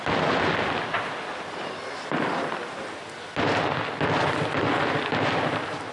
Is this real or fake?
real